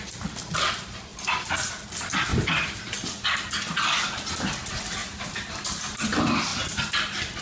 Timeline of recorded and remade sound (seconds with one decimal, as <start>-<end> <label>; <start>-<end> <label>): 0.0-1.1 recorded; 1.1-1.7 remade; 1.7-2.3 recorded; 2.3-2.8 remade; 2.8-5.0 recorded; 5.0-5.8 remade; 5.8-7.4 recorded